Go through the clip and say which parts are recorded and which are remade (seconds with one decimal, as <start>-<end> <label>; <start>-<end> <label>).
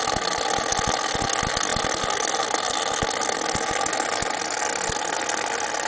0.0-5.9 recorded